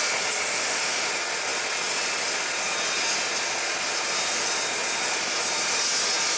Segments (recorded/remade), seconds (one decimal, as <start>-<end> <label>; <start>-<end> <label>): 0.0-0.5 recorded; 0.5-1.1 remade; 1.1-6.4 recorded